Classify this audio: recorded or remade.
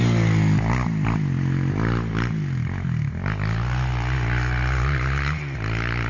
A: recorded